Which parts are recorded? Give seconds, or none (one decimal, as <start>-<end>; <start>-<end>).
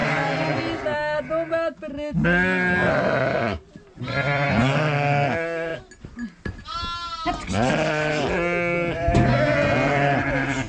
0.0-10.7